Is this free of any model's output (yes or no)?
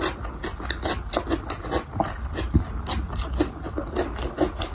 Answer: yes